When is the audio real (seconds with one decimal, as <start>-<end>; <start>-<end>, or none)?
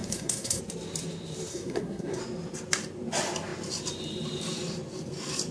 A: 0.6-1.5; 2.2-5.5